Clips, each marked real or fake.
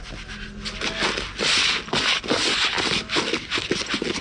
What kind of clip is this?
real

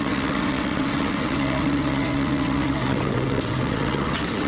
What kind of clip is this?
fake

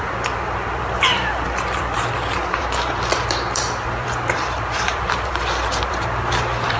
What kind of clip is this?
fake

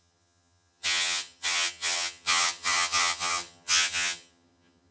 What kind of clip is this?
fake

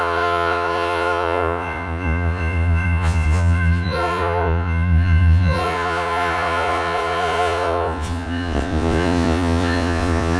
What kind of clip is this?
fake